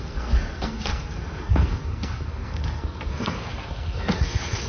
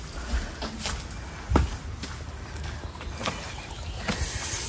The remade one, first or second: first